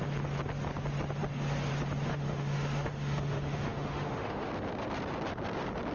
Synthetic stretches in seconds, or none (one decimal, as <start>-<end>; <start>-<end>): 2.1-4.5